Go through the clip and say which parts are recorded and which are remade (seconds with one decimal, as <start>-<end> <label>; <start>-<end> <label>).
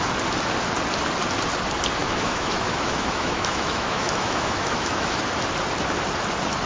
0.0-2.0 recorded; 2.0-5.2 remade; 5.2-6.7 recorded